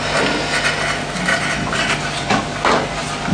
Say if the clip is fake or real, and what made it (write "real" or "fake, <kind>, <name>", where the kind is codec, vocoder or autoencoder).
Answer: real